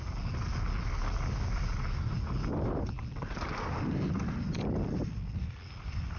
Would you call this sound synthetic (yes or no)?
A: no